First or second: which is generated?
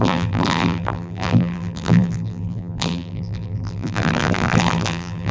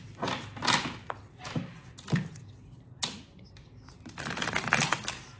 first